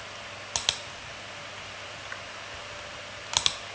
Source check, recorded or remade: recorded